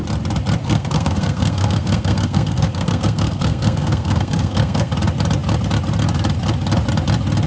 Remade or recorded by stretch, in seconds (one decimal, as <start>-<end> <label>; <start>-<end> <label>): 0.0-0.6 recorded; 0.6-4.9 remade; 4.9-7.5 recorded